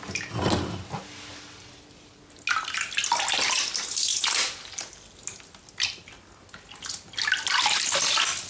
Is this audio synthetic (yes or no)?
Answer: no